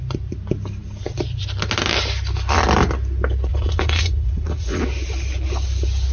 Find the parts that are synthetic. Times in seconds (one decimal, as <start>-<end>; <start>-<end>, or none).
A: 3.5-4.8